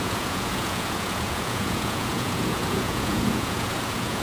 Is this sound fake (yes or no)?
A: yes